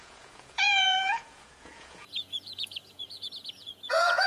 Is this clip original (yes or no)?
no